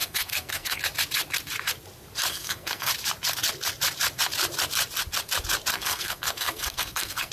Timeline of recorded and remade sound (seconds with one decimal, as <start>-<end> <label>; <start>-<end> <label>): 0.0-0.8 remade; 0.8-2.3 recorded; 2.3-2.9 remade; 2.9-5.7 recorded; 5.7-7.3 remade